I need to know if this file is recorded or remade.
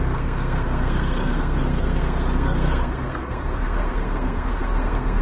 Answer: remade